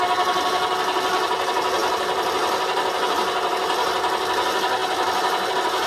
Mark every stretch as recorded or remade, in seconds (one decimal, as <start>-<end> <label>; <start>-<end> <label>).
0.0-1.8 recorded; 1.8-3.1 remade; 3.1-5.9 recorded